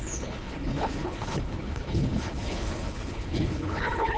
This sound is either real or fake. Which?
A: fake